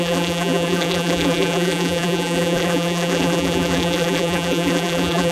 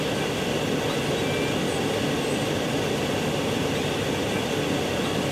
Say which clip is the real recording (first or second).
second